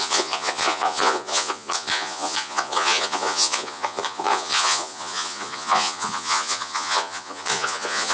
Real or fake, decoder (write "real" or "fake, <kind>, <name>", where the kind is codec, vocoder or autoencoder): fake, vocoder, Vocos